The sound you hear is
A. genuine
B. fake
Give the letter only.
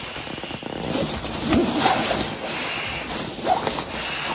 A